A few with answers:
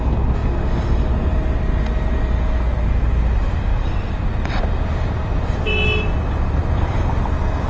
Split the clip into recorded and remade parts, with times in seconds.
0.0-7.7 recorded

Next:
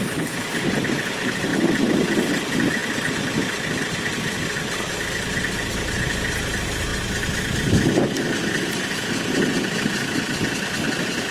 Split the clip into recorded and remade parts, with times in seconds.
0.0-1.5 remade; 1.5-2.4 recorded; 2.4-6.9 remade; 6.9-10.9 recorded; 10.9-11.3 remade

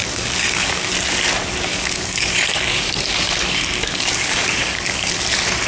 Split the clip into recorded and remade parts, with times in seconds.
0.0-0.9 remade; 0.9-1.7 recorded; 1.7-5.1 remade; 5.1-5.7 recorded

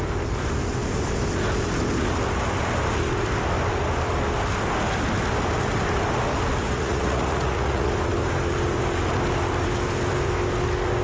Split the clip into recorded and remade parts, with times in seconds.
0.0-6.6 recorded; 6.6-7.9 remade; 7.9-11.0 recorded